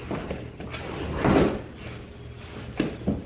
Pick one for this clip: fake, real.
fake